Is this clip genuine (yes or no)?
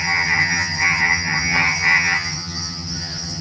no